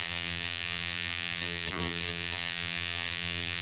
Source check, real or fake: fake